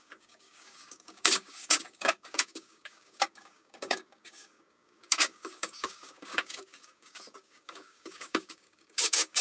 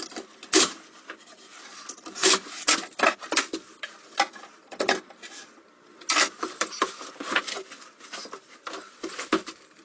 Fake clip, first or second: first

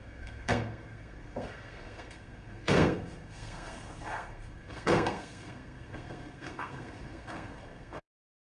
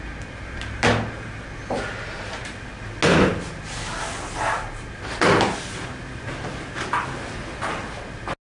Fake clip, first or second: first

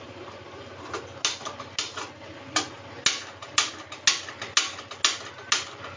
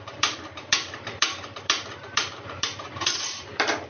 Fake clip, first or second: second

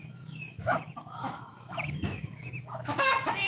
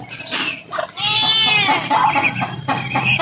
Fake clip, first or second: first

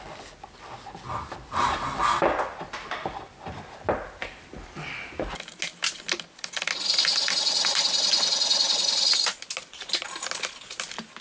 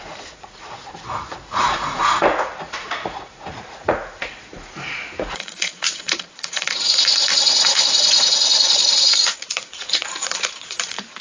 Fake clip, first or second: second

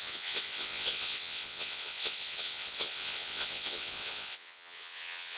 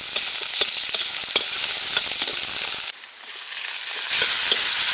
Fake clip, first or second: first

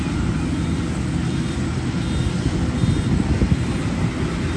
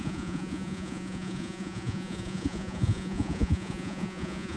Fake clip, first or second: second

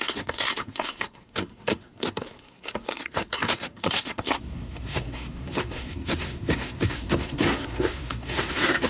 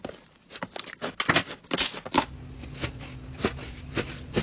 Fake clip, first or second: first